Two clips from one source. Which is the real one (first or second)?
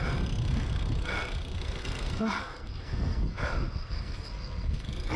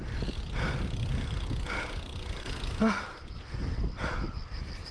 second